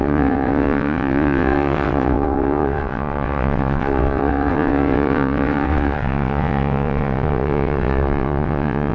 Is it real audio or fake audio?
fake